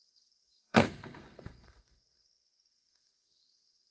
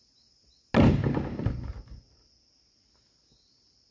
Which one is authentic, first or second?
second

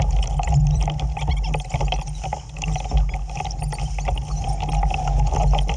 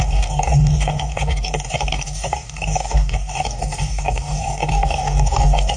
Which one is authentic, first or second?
first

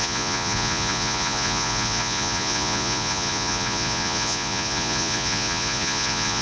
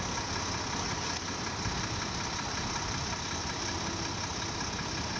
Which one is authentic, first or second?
second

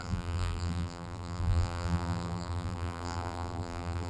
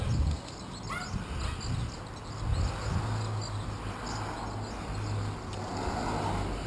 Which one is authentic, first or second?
second